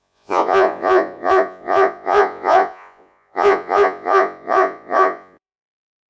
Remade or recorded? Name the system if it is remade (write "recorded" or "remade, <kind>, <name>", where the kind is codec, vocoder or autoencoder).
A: remade, vocoder, Vocos